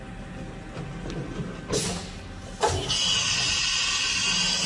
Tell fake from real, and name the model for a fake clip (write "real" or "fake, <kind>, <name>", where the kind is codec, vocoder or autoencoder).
real